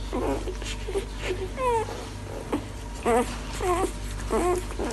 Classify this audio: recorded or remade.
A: recorded